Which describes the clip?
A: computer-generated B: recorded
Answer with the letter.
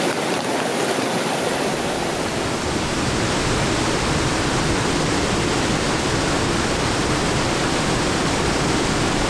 B